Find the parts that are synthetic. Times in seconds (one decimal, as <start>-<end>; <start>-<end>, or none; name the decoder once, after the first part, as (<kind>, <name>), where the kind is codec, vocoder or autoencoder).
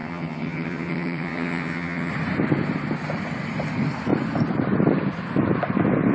0.0-2.1 (vocoder, HiFi-GAN)